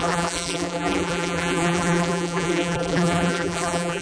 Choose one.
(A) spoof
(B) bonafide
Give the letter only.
A